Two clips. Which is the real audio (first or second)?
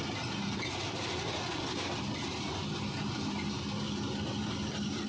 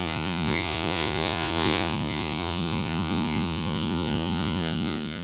first